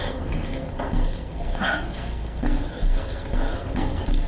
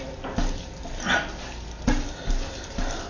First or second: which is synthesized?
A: first